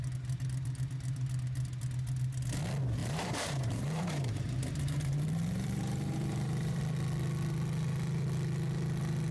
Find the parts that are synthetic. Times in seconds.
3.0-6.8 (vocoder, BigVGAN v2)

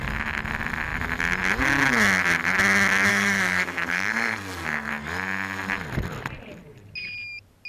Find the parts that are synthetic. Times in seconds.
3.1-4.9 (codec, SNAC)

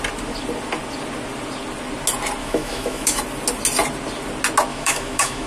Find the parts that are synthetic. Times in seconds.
2.4-3.2 (autoencoder, DAC-VAE); 4.7-5.5

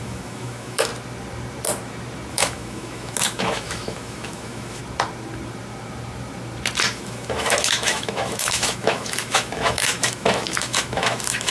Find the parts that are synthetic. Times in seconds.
0.0-0.9 (autoencoder, DAC-VAE); 2.3-4.8; 6.9-11.5